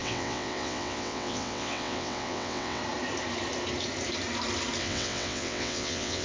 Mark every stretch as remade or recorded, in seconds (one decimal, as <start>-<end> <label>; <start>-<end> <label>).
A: 0.0-2.8 remade; 2.8-4.8 recorded; 4.8-6.2 remade